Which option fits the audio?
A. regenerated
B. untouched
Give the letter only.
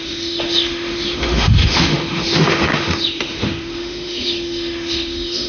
A